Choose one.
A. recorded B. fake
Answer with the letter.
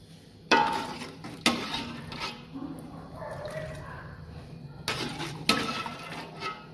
A